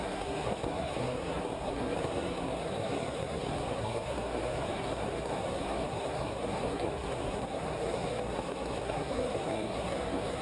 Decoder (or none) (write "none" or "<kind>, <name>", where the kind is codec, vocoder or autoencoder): codec, SNAC